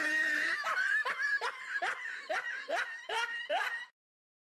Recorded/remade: remade